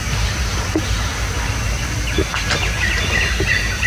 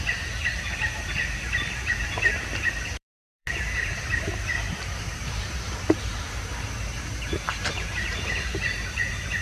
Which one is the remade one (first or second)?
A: second